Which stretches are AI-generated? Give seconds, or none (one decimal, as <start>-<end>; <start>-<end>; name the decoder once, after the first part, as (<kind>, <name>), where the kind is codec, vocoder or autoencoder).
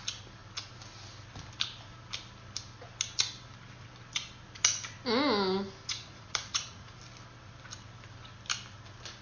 5.9-7.0 (vocoder, Vocos)